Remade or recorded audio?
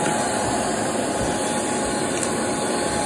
recorded